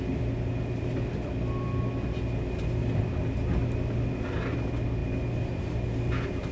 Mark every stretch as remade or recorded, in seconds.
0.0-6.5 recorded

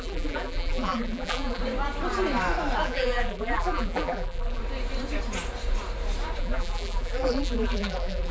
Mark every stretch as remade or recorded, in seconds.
0.0-1.6 remade; 1.6-2.8 recorded; 2.8-4.6 remade; 4.6-6.4 recorded; 6.4-8.3 remade

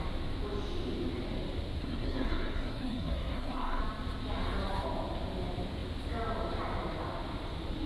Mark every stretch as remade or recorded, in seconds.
0.0-1.8 recorded; 1.8-3.8 remade; 3.8-7.9 recorded

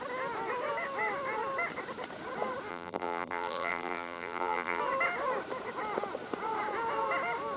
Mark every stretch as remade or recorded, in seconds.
0.0-2.7 recorded; 2.7-4.8 remade; 4.8-7.6 recorded

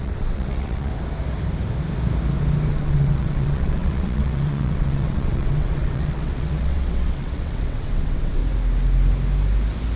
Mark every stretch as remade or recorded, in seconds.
0.0-0.9 remade; 0.9-2.7 recorded; 2.7-8.4 remade; 8.4-10.0 recorded